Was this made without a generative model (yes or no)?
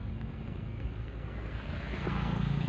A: no